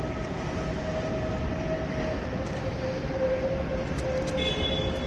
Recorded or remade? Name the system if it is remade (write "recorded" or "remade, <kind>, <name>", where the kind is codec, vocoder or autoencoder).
recorded